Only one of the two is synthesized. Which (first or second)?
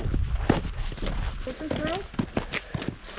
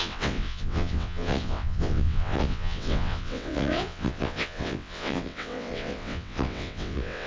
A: second